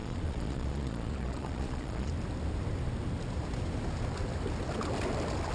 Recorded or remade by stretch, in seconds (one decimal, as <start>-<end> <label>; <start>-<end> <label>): 0.0-2.1 remade; 2.1-5.5 recorded